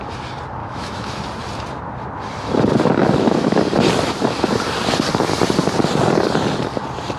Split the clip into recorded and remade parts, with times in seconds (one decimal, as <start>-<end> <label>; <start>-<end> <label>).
0.0-0.6 recorded; 0.6-1.2 remade; 1.2-3.0 recorded; 3.0-3.6 remade; 3.6-7.2 recorded